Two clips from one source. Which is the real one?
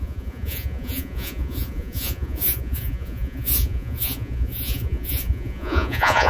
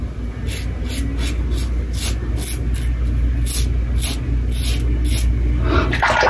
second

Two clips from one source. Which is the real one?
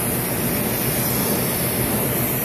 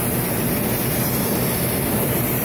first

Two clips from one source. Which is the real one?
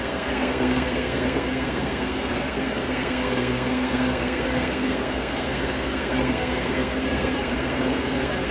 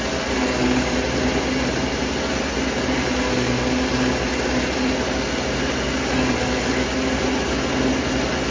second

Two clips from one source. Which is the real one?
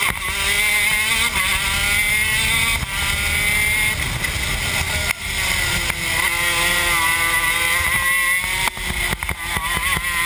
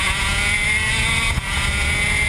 first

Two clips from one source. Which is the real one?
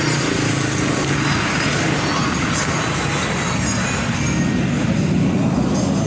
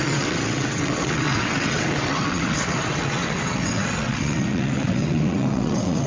first